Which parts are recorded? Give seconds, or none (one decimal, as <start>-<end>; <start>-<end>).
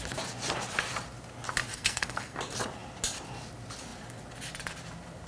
0.0-1.7; 2.4-5.3